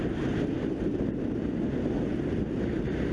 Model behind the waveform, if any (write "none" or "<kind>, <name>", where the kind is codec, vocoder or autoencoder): none